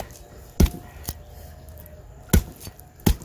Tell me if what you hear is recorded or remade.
recorded